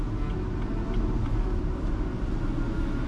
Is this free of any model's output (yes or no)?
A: yes